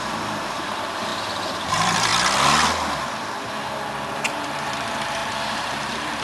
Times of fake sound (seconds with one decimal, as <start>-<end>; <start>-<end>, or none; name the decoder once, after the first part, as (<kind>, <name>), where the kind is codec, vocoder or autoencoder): 0.0-2.1 (vocoder, BigVGAN v2); 4.1-6.2